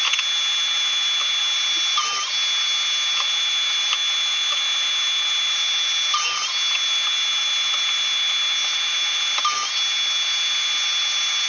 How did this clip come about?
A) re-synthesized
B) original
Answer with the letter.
B